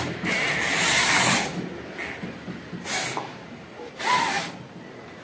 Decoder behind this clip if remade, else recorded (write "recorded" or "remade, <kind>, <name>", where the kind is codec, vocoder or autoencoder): recorded